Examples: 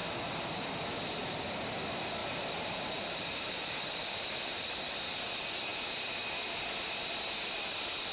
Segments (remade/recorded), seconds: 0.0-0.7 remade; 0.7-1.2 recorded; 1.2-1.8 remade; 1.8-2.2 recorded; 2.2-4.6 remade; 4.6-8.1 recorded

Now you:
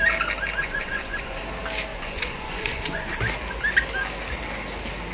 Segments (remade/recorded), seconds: 0.0-0.6 recorded; 0.6-1.4 remade; 1.4-1.9 recorded; 1.9-3.2 remade; 3.2-5.1 recorded

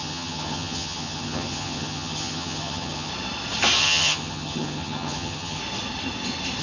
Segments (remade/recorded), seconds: 0.0-3.1 remade; 3.1-3.8 recorded; 3.8-5.6 remade; 5.6-6.6 recorded

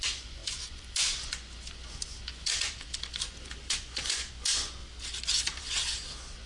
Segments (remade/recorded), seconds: 0.0-4.8 remade; 4.8-5.6 recorded; 5.6-6.5 remade

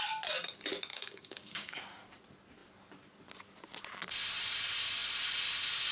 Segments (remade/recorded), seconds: 0.0-0.9 recorded; 0.9-1.8 remade; 1.8-5.9 recorded

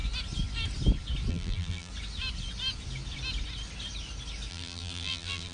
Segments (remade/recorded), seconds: 0.0-1.3 recorded; 1.3-1.9 remade; 1.9-4.5 recorded; 4.5-5.5 remade